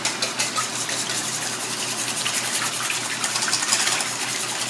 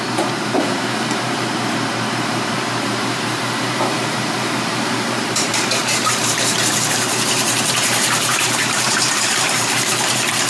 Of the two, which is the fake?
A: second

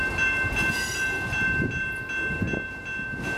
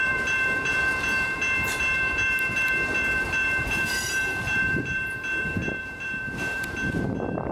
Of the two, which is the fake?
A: second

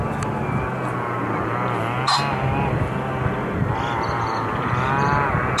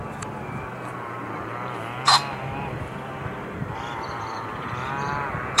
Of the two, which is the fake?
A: second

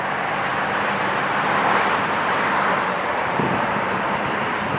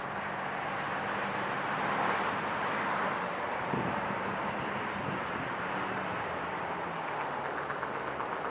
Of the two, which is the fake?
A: first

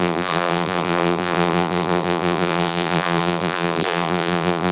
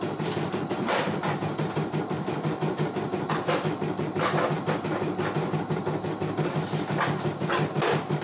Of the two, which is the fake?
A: first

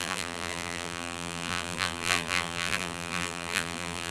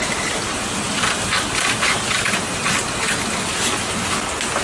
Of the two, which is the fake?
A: first